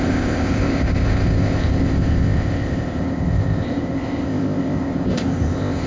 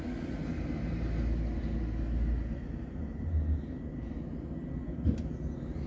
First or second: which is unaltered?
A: second